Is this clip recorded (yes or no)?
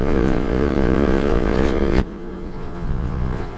no